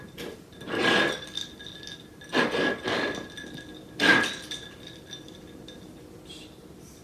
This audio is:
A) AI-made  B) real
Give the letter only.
B